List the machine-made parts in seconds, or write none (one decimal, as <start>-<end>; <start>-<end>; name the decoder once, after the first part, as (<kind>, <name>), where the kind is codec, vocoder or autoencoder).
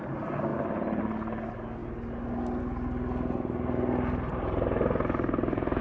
4.3-5.8 (vocoder, BigVGAN v2)